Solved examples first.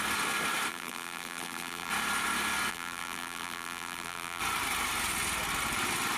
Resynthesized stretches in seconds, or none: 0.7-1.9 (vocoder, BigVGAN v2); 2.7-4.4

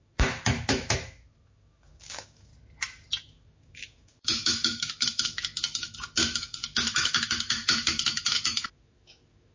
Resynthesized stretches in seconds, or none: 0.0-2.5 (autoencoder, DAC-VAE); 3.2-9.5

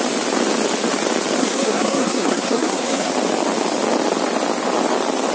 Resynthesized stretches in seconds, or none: 1.4-3.1 (codec, SNAC)

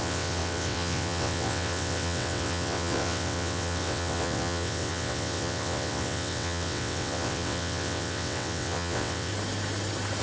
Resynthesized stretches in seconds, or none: 0.0-9.3 (vocoder, WaveNeXt)

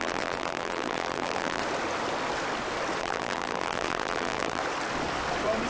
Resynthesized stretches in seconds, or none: 0.0-1.6 (vocoder, BigVGAN v2); 3.0-4.6